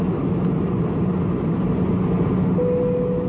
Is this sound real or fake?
real